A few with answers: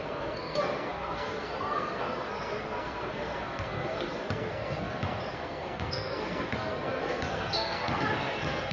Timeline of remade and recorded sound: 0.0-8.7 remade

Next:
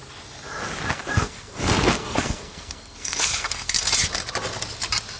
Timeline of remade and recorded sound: 0.0-0.9 recorded; 0.9-3.9 remade; 3.9-5.2 recorded

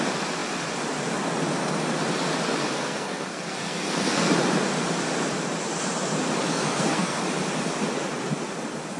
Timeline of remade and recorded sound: 0.0-2.6 recorded; 2.6-4.3 remade; 4.3-6.5 recorded; 6.5-7.2 remade; 7.2-9.0 recorded

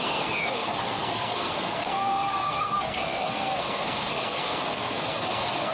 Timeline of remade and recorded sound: 0.0-5.7 remade